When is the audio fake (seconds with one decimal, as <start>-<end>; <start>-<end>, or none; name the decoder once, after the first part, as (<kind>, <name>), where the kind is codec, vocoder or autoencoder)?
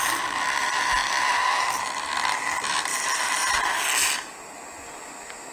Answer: 2.9-5.5 (vocoder, BigVGAN v2)